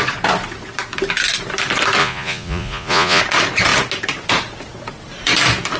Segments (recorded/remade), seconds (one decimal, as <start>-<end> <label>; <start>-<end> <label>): 0.0-2.0 recorded; 2.0-3.2 remade; 3.2-5.8 recorded